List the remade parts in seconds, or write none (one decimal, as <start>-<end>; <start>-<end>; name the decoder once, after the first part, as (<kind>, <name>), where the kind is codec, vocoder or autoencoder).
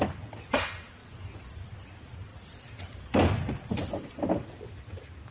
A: 1.0-1.5 (vocoder, Vocos)